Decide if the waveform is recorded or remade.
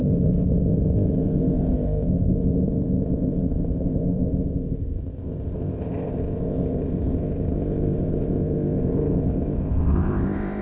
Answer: remade